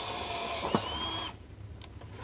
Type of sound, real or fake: real